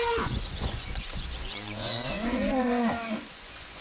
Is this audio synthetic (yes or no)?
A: yes